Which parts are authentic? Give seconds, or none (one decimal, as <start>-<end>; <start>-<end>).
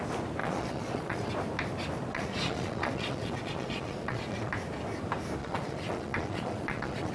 0.0-0.4; 1.3-2.1; 4.5-5.4